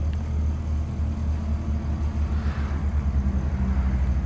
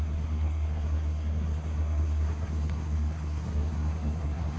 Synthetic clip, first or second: second